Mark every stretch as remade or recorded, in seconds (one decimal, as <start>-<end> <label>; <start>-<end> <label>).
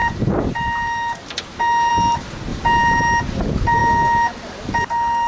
0.0-1.9 remade; 1.9-2.5 recorded; 2.5-3.0 remade; 3.0-5.3 recorded